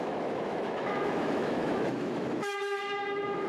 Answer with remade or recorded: remade